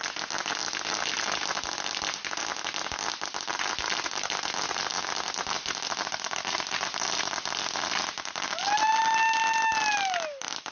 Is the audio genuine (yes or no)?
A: yes